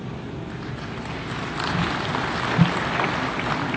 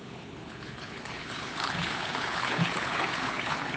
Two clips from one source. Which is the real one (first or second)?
first